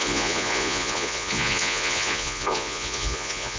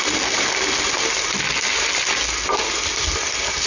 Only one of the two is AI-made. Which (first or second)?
first